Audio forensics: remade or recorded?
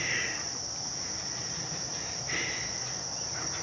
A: recorded